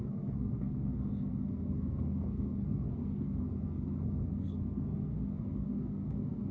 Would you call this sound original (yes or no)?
no